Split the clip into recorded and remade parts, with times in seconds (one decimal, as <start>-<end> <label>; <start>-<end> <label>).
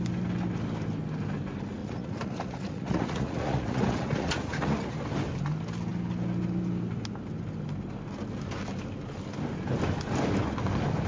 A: 0.0-1.8 recorded; 1.8-5.0 remade; 5.0-11.1 recorded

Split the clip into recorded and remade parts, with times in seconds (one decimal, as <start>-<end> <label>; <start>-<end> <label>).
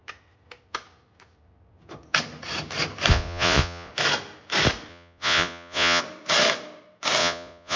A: 0.0-3.1 recorded; 3.1-3.9 remade; 3.9-4.9 recorded; 4.9-6.0 remade; 6.0-7.2 recorded; 7.2-7.8 remade